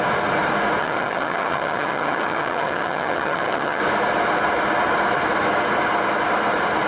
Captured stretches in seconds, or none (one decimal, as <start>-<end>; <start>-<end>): 0.0-0.8; 3.8-6.9